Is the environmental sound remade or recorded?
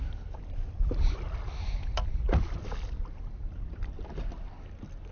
recorded